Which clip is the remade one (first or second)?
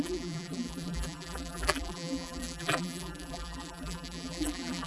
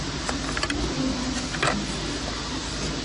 first